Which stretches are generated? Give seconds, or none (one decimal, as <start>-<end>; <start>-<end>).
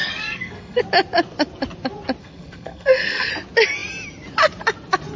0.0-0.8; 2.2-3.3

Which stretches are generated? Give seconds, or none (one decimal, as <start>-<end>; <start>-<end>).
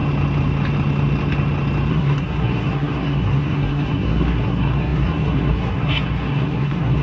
1.9-7.0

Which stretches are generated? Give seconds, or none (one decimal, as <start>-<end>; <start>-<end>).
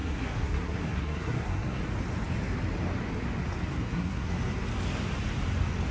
0.0-1.8; 3.7-4.3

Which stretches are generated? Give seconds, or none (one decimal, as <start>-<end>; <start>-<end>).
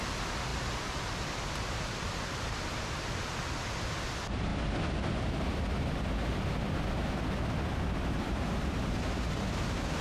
none